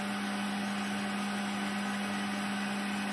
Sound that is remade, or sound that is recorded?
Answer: recorded